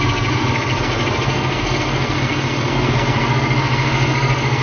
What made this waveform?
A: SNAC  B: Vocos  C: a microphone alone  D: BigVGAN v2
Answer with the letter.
A